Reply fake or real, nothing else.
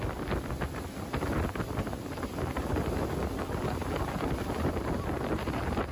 real